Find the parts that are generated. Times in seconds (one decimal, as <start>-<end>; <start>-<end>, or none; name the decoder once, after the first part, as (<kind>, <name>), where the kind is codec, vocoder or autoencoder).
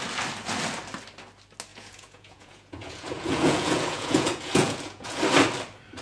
1.7-5.2 (vocoder, Vocos)